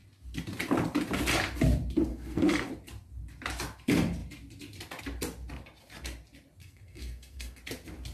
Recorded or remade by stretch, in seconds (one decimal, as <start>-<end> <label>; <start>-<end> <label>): 0.0-2.1 recorded; 2.1-2.7 remade; 2.7-6.6 recorded; 6.6-7.6 remade; 7.6-8.1 recorded